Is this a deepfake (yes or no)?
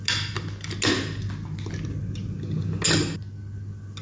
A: no